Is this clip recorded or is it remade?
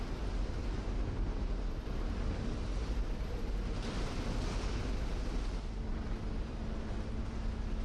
recorded